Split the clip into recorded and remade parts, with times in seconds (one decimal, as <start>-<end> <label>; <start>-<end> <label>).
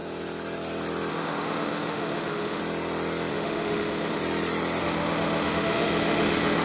0.0-1.1 recorded; 1.1-2.6 remade; 2.6-3.3 recorded; 3.3-4.2 remade; 4.2-4.8 recorded; 4.8-6.6 remade